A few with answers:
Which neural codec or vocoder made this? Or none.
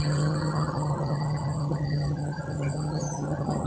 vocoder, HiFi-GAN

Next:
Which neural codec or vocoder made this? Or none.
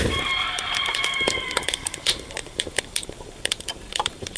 vocoder, BigVGAN v2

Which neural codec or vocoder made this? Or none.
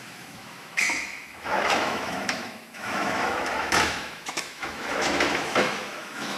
autoencoder, DAC-VAE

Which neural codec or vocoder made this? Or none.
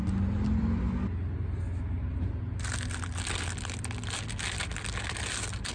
none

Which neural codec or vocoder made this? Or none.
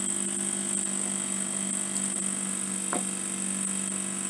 none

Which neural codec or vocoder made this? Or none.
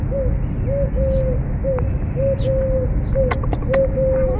none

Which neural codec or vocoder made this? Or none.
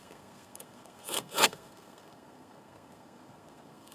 codec, SNAC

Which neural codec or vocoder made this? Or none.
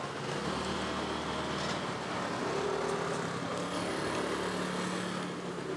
none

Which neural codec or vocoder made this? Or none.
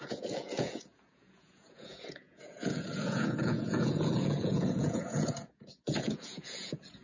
vocoder, Vocos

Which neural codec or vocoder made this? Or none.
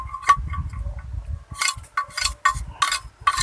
none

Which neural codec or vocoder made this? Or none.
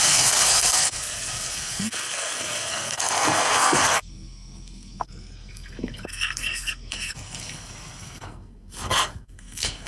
codec, SNAC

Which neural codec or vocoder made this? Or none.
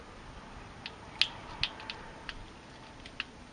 none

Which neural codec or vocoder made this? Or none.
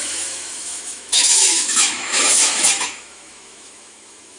autoencoder, DAC-VAE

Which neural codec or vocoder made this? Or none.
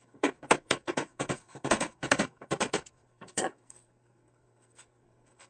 codec, SNAC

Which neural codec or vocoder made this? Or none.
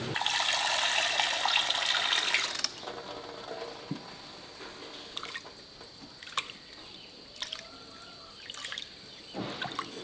none